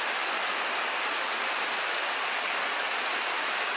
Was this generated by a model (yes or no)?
yes